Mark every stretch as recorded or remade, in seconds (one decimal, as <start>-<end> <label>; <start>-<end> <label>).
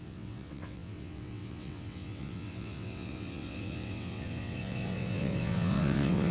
0.0-6.3 remade